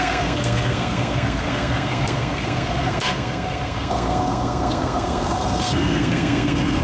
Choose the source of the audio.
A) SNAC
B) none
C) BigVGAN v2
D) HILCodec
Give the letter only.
A